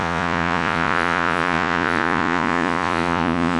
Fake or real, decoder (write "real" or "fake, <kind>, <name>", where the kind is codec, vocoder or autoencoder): fake, vocoder, Vocos